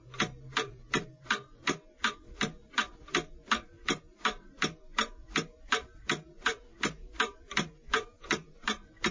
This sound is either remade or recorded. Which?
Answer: remade